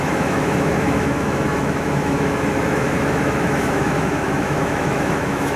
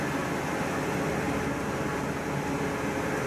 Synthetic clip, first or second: first